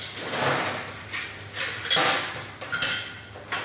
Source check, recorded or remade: recorded